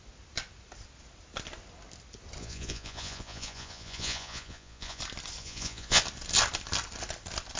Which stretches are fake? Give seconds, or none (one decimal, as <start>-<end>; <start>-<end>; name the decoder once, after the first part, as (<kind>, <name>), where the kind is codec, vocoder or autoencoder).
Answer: 2.4-5.0 (vocoder, Vocos); 5.4-6.0